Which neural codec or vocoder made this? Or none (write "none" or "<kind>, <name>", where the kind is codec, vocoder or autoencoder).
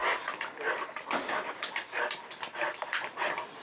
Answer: none